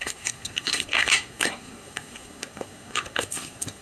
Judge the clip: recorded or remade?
remade